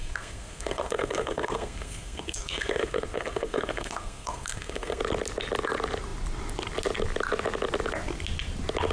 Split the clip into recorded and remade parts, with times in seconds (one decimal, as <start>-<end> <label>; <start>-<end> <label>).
0.0-5.0 remade; 5.0-8.9 recorded